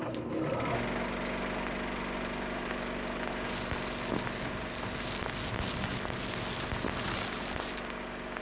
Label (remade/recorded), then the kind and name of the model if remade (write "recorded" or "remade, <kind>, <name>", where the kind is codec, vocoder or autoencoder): recorded